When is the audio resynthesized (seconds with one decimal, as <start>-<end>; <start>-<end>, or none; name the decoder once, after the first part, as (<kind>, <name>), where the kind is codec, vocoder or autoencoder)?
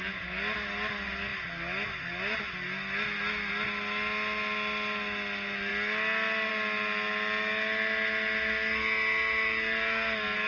none